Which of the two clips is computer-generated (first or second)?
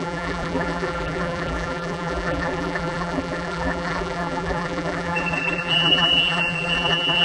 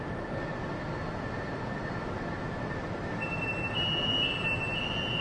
first